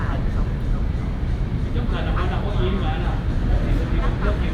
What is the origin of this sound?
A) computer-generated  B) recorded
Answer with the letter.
B